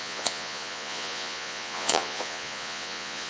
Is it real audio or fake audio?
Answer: fake